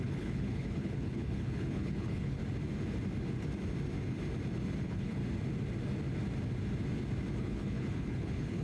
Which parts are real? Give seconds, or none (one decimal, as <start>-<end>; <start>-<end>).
2.4-4.8; 5.2-7.4